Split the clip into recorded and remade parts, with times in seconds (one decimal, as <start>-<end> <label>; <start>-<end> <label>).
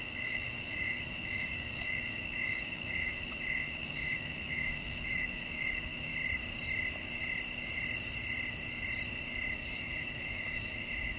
0.0-6.1 remade; 6.1-9.5 recorded; 9.5-11.2 remade